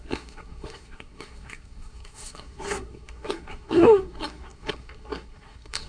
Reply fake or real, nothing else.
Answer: fake